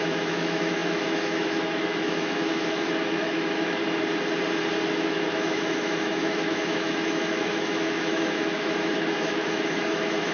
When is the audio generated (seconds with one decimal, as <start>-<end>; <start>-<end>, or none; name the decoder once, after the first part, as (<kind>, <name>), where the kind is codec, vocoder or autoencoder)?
0.0-3.8 (autoencoder, DAC-VAE); 4.9-10.3

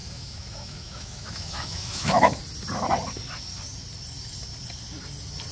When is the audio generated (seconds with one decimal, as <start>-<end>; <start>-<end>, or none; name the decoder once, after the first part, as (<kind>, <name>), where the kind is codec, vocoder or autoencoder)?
0.0-2.4 (autoencoder, DAC-VAE)

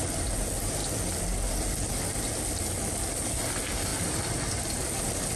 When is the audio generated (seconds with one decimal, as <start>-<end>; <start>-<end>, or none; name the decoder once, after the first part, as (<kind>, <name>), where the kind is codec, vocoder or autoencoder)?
none

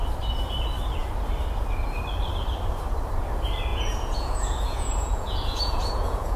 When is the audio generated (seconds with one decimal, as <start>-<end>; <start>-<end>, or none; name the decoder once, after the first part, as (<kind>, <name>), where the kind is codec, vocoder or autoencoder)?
3.7-6.4 (vocoder, Vocos)